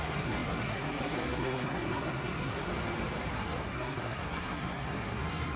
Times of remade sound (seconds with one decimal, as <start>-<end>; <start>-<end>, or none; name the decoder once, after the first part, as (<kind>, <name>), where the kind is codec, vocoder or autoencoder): 0.0-2.7 (codec, SNAC); 3.3-5.6